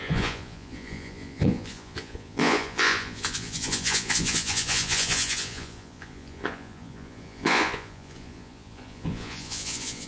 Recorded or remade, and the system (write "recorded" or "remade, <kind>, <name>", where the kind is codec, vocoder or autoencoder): remade, vocoder, Vocos